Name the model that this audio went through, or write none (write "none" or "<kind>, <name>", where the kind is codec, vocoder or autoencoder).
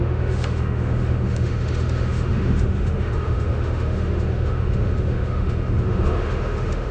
autoencoder, DAC-VAE